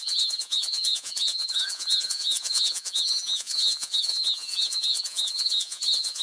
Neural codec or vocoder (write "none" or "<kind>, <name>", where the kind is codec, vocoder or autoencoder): vocoder, Vocos